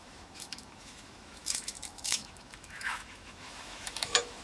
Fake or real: fake